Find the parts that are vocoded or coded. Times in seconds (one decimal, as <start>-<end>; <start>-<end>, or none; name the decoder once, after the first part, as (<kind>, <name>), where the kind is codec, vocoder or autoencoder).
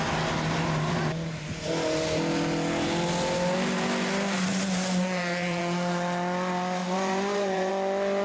4.5-5.6 (vocoder, BigVGAN v2); 6.8-7.7